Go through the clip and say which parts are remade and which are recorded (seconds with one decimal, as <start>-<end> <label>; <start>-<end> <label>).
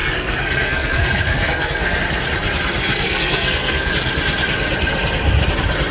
0.0-2.0 remade; 2.0-2.8 recorded; 2.8-3.9 remade; 3.9-5.9 recorded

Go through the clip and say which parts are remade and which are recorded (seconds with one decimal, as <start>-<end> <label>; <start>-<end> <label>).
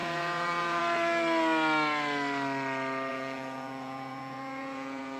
0.0-0.8 remade; 0.8-3.1 recorded; 3.1-5.2 remade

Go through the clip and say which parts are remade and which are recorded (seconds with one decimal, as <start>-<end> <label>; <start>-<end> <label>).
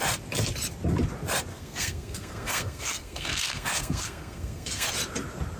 0.0-1.5 recorded; 1.5-4.9 remade; 4.9-5.6 recorded